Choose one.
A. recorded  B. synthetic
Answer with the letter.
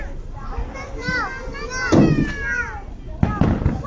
A